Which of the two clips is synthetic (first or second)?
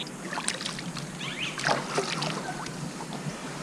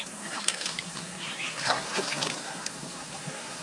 second